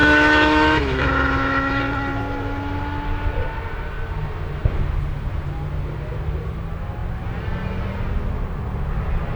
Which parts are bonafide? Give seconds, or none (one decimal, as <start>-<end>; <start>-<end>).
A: 1.8-9.4